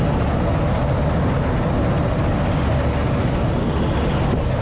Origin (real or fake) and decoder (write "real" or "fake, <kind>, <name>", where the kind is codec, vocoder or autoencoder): real